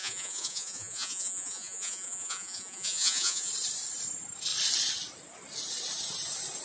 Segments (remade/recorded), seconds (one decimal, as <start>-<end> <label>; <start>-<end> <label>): 0.0-3.5 remade; 3.5-6.6 recorded